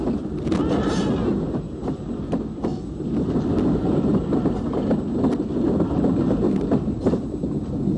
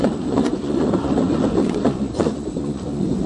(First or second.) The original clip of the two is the first